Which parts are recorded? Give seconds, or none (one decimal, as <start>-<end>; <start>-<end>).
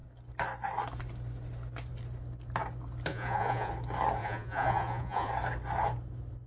0.0-3.1; 3.7-4.2; 5.3-6.5